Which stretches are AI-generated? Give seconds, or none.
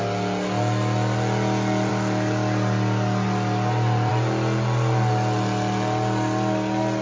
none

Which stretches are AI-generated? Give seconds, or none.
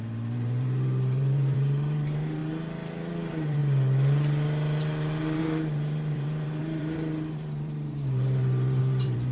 0.0-2.4 (vocoder, BigVGAN v2); 3.1-3.6; 5.4-9.3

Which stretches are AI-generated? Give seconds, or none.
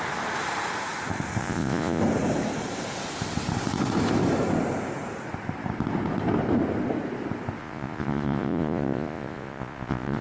1.4-2.0 (vocoder, Vocos); 7.6-10.2